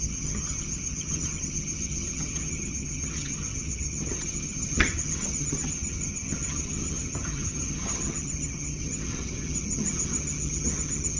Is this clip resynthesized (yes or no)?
yes